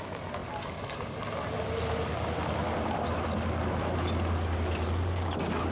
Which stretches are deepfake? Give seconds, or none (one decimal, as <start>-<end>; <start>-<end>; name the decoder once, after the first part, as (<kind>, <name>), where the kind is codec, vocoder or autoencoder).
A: none